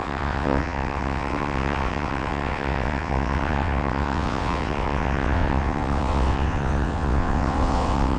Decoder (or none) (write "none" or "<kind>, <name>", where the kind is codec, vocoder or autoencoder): vocoder, WaveNeXt